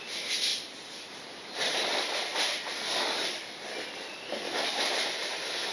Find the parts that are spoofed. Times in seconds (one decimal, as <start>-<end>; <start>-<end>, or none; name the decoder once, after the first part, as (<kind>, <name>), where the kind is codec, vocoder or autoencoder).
0.0-0.5 (vocoder, BigVGAN v2); 1.1-2.3; 4.7-5.7